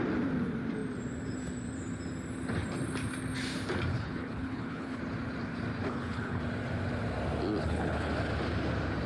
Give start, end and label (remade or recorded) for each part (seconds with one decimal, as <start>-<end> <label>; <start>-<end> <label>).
0.0-3.9 recorded; 3.9-5.0 remade; 5.0-5.8 recorded; 5.8-6.4 remade; 6.4-7.6 recorded; 7.6-8.1 remade; 8.1-9.1 recorded